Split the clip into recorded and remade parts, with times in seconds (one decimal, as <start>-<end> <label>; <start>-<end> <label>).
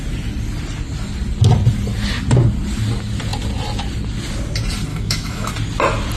0.0-4.9 recorded; 4.9-5.5 remade; 5.5-6.2 recorded